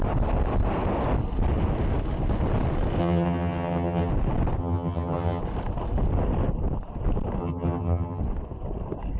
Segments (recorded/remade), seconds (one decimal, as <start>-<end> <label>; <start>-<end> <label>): 0.0-3.0 recorded; 3.0-4.1 remade; 4.1-4.6 recorded; 4.6-5.4 remade; 5.4-7.4 recorded; 7.4-8.2 remade; 8.2-9.2 recorded